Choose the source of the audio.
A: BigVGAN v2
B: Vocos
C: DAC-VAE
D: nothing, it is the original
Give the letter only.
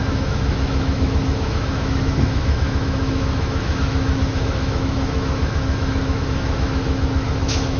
C